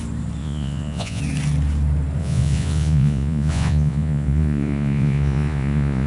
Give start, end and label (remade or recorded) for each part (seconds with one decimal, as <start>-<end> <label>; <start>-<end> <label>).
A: 0.0-0.4 recorded; 0.4-1.2 remade; 1.2-2.2 recorded; 2.2-6.1 remade